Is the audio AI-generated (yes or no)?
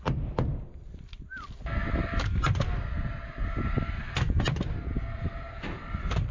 no